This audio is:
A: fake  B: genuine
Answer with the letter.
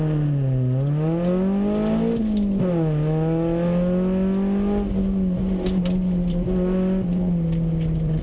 B